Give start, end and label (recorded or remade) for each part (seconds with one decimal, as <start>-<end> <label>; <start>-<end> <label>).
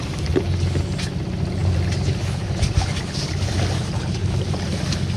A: 0.0-1.6 recorded; 1.6-4.7 remade; 4.7-5.2 recorded